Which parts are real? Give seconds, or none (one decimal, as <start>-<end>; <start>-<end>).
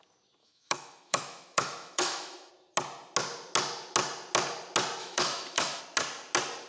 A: 0.0-0.4; 2.5-5.0; 5.8-6.7